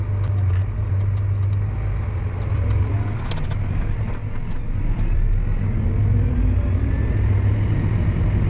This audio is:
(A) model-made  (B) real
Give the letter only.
B